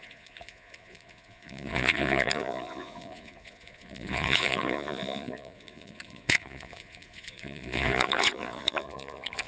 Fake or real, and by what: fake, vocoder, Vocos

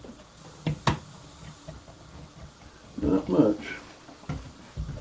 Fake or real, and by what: real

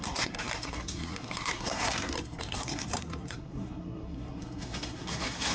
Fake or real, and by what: fake, codec, SNAC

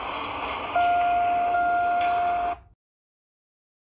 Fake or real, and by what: real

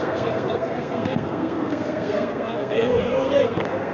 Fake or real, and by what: fake, codec, SNAC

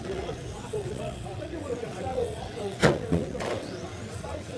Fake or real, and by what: fake, vocoder, WaveNeXt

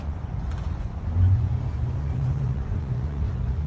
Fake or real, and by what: fake, vocoder, Vocos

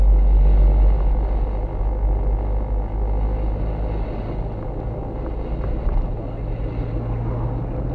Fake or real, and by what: real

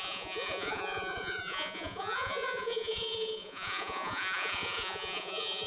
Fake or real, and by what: fake, vocoder, Vocos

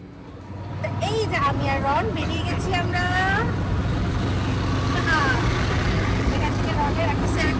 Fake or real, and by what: real